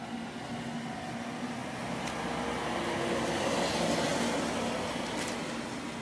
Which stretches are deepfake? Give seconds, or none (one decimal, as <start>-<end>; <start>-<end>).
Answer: none

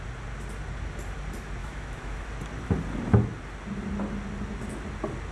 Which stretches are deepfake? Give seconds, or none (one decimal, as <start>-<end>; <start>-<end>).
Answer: 1.6-2.3

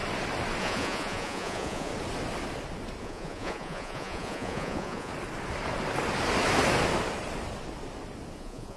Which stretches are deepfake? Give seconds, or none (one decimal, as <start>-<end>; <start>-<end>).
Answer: 0.6-1.9; 3.0-5.1; 8.4-8.8

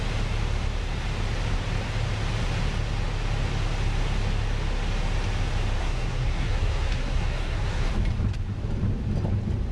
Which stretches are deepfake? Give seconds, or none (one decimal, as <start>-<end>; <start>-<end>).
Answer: 5.8-7.9

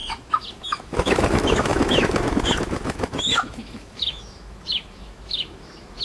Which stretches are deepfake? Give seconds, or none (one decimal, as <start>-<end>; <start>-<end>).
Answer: 0.0-6.0

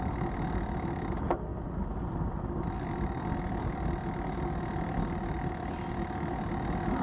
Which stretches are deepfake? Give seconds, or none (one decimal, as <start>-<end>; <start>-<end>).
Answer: none

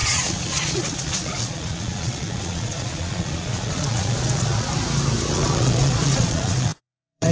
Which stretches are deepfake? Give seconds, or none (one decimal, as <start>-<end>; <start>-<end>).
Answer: 0.0-4.7; 5.3-7.3